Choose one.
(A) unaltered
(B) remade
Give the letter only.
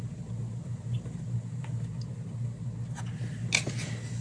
A